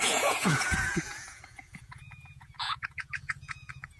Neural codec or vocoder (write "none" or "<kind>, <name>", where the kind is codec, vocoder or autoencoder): vocoder, Vocos